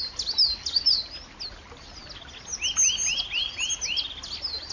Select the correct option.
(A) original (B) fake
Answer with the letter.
A